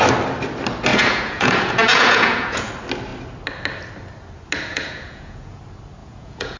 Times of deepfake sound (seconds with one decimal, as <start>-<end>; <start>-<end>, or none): 0.9-2.7; 4.7-5.6; 6.0-6.6